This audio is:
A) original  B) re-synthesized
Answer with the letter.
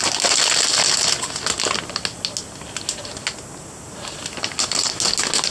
A